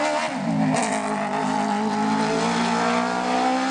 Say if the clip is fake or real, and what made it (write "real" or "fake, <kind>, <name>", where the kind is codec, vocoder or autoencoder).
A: real